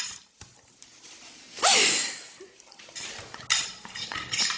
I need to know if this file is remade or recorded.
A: recorded